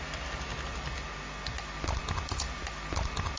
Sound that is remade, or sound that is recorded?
recorded